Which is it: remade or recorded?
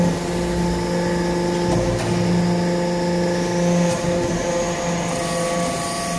recorded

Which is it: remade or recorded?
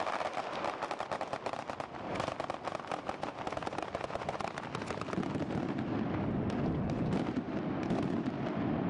recorded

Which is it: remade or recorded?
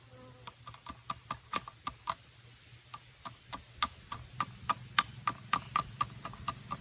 recorded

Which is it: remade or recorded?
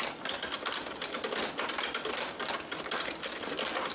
recorded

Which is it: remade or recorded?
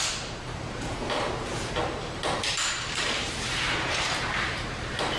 remade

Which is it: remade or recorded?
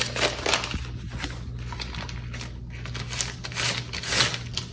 recorded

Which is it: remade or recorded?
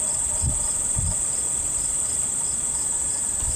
recorded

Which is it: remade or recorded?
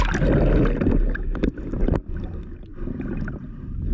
recorded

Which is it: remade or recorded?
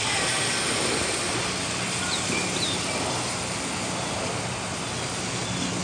recorded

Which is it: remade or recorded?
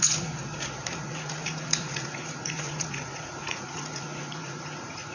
remade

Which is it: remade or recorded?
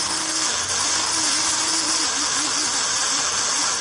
recorded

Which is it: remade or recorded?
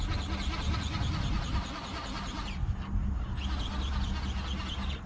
recorded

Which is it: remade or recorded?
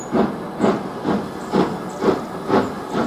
recorded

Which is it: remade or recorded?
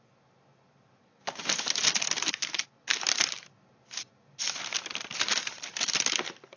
recorded